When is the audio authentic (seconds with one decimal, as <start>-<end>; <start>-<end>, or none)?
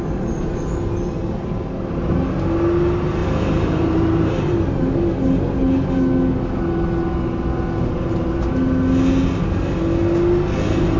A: 0.0-3.2; 4.6-11.0